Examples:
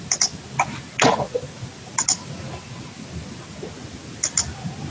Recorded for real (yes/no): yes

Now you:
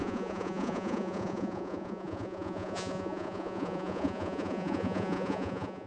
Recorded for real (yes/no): no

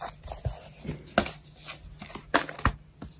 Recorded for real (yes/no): yes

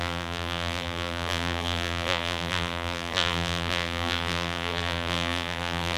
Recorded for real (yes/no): no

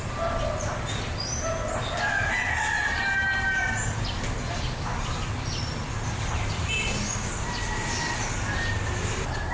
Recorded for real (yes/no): yes